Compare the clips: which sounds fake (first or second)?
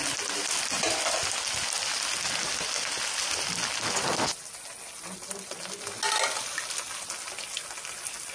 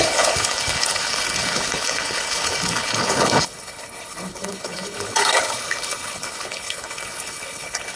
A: second